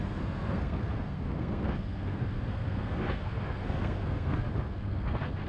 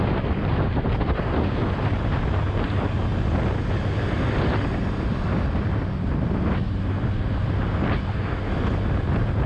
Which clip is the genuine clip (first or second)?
second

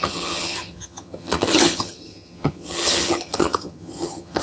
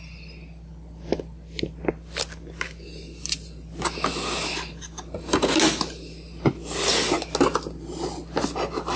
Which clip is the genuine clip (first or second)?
second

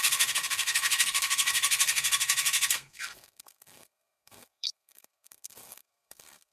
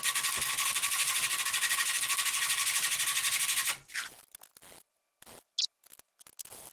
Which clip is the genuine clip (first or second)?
second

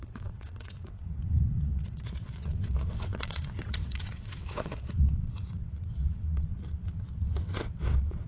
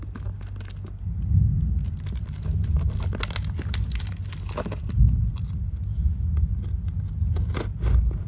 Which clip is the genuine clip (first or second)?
second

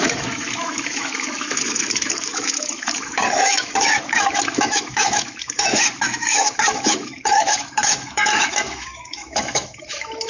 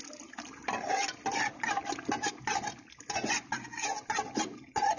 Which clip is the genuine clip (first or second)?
second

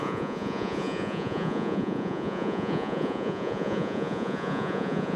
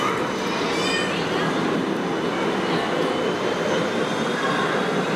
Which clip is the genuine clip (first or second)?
second